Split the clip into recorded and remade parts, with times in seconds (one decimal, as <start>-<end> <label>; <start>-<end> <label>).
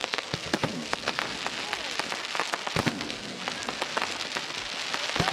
0.0-1.2 remade; 1.2-2.8 recorded; 2.8-3.4 remade; 3.4-5.3 recorded